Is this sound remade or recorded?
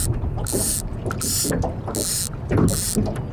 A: recorded